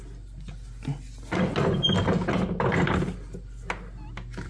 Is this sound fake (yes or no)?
no